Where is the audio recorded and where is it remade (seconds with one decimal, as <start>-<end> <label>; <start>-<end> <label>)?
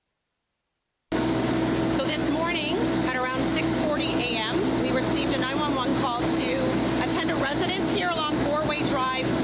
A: 0.0-9.4 recorded